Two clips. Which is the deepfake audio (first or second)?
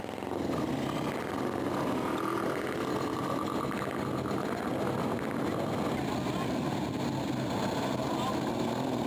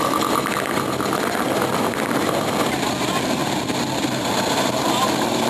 second